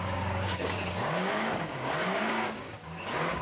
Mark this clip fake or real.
fake